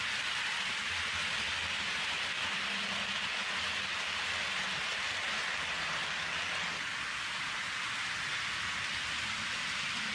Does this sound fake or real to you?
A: real